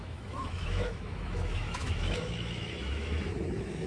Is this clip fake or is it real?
fake